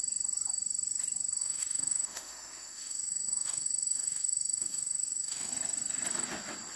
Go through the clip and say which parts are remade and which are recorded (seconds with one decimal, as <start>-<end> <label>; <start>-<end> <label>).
0.0-1.4 recorded; 1.4-5.5 remade; 5.5-6.8 recorded